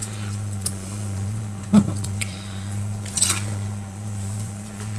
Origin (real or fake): fake